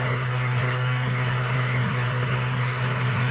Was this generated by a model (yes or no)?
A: yes